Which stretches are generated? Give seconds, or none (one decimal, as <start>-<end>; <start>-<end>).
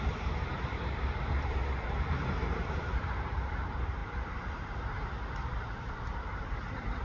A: 0.0-7.0